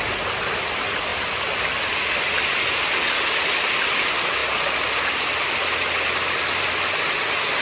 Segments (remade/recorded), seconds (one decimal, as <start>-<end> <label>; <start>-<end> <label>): 0.0-7.6 recorded